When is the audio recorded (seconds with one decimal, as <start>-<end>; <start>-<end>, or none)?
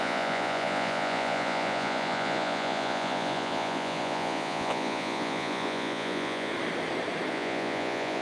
6.5-7.3